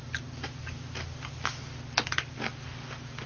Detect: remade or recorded recorded